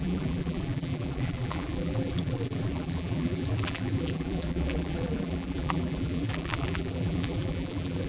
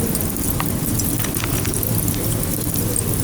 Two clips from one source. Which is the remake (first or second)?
first